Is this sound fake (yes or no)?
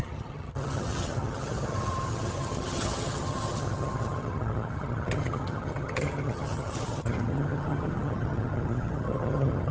yes